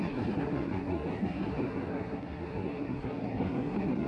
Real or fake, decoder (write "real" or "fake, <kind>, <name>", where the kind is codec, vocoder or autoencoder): fake, codec, SNAC